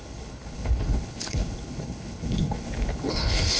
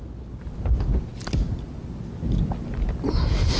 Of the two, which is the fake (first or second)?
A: first